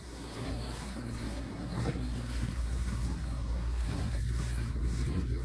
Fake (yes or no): yes